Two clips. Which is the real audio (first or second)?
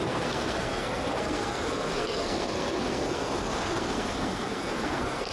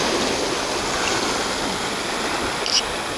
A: second